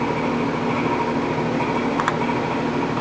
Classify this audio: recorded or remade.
recorded